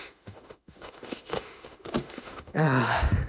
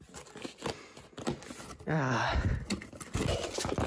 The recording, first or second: second